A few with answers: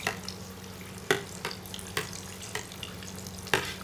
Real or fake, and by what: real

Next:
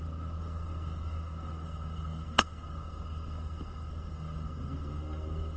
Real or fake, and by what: fake, codec, SNAC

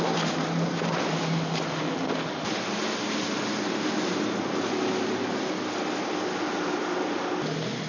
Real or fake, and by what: real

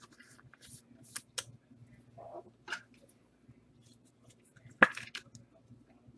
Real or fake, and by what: real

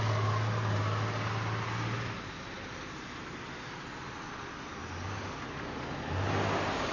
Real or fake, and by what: real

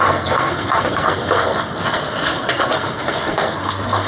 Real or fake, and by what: fake, codec, SNAC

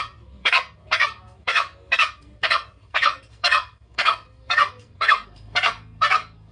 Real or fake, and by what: fake, codec, SNAC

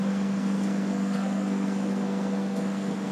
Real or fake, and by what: fake, codec, SNAC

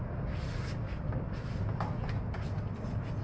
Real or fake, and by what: real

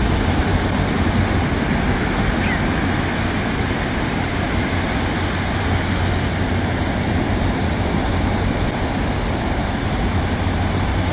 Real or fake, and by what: real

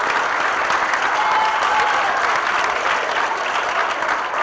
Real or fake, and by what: real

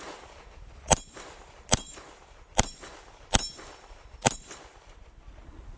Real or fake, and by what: real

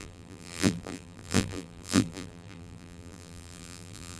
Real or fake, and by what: fake, vocoder, BigVGAN v2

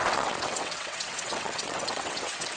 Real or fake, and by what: fake, vocoder, WaveNeXt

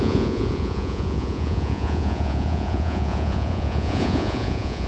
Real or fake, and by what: fake, vocoder, Vocos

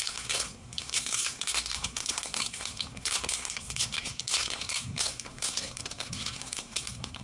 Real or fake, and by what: fake, codec, SNAC